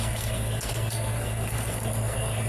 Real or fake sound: fake